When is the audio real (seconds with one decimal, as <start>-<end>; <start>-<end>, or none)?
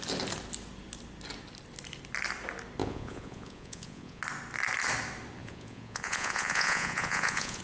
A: 0.0-2.8; 4.2-5.4